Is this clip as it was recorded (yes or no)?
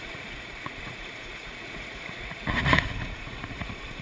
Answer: no